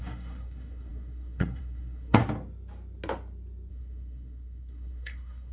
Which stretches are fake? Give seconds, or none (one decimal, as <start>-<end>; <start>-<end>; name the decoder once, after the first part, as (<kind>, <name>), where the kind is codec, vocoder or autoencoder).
0.0-2.2 (codec, SNAC); 3.7-5.5